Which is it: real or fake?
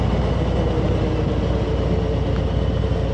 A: real